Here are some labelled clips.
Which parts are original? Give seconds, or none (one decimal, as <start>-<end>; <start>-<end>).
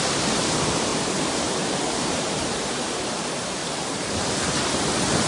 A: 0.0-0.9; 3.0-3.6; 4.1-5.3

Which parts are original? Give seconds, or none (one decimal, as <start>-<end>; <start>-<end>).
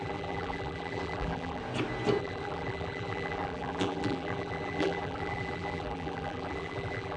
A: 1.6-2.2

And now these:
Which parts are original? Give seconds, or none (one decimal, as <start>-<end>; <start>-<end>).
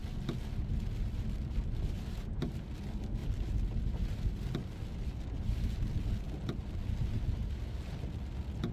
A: 0.0-8.7